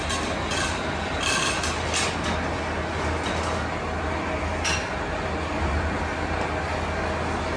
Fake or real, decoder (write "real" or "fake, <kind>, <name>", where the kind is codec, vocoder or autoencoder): real